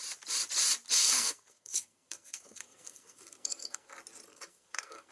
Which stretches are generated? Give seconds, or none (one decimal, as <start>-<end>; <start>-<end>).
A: 1.0-3.9; 4.3-5.1